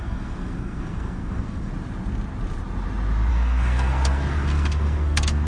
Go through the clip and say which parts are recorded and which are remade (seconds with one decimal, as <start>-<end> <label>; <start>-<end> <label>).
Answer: 0.0-1.7 remade; 1.7-3.3 recorded; 3.3-5.5 remade

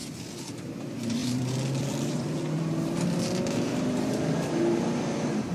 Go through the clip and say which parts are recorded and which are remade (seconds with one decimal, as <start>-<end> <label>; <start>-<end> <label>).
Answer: 0.0-5.5 remade

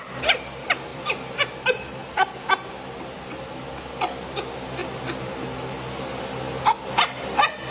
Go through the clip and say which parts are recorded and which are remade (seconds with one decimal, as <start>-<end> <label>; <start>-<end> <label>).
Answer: 0.0-0.9 recorded; 0.9-1.5 remade; 1.5-4.8 recorded; 4.8-5.3 remade; 5.3-7.7 recorded